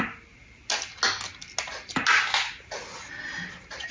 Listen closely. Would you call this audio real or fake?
real